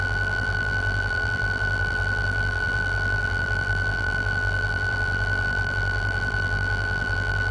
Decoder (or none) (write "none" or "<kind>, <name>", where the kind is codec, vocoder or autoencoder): vocoder, BigVGAN v2